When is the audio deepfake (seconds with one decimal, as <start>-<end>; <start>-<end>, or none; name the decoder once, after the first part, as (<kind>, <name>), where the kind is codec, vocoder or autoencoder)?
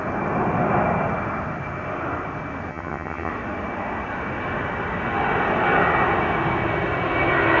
2.7-3.3 (vocoder, HiFi-GAN)